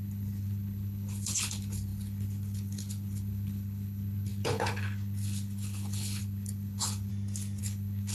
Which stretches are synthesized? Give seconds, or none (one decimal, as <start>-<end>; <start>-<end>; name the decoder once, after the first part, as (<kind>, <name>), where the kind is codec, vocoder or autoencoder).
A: 0.0-7.1 (codec, HILCodec); 7.6-8.1